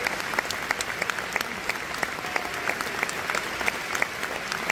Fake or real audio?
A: real